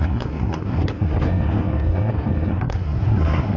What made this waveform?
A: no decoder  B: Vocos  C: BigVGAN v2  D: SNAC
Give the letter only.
D